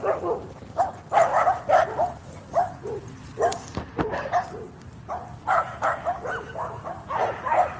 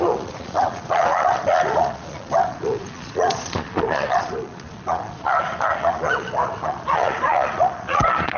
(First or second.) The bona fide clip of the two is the first